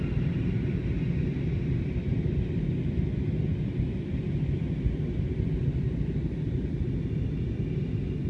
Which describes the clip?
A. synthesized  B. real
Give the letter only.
B